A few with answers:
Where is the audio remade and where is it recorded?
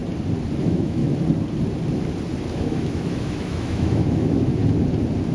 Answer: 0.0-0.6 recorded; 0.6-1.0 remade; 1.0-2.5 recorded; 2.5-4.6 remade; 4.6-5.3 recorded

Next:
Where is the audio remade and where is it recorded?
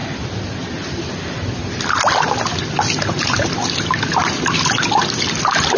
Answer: 0.0-5.8 recorded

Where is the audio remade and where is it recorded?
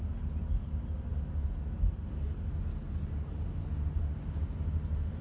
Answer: 0.0-5.2 recorded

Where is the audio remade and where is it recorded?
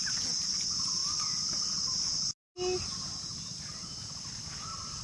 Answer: 0.0-5.0 recorded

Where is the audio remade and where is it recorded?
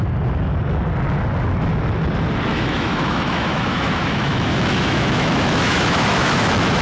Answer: 0.0-2.5 recorded; 2.5-6.8 remade